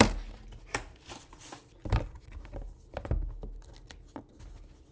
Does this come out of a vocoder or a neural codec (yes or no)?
no